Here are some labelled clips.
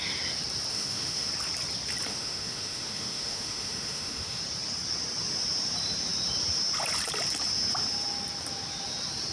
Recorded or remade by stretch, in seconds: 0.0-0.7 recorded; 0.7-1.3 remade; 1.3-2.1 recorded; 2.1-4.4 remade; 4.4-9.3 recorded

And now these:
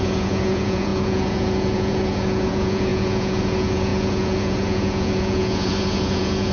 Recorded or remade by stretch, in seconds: 0.0-6.5 remade

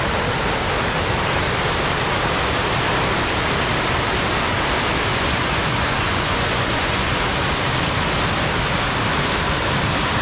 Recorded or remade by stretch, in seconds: 0.0-5.1 recorded; 5.1-7.2 remade; 7.2-10.2 recorded

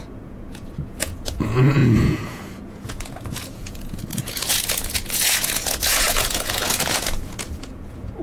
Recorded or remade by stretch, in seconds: 0.0-8.2 remade

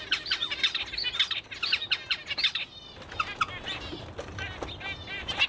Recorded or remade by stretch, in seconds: 0.0-5.5 recorded